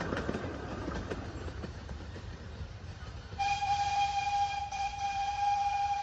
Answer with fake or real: fake